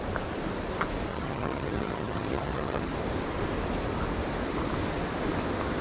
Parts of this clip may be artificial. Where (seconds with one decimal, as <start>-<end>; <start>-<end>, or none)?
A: 1.1-2.9